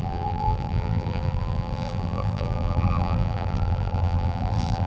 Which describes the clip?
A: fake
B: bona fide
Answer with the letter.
A